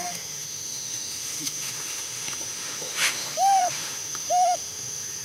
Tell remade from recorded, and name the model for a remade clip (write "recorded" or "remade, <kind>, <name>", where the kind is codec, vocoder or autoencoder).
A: remade, autoencoder, DAC-VAE